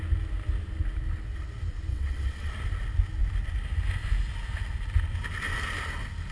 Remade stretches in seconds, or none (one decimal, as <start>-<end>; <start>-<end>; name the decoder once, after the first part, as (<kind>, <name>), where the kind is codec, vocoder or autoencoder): 1.9-2.5 (vocoder, WaveNeXt)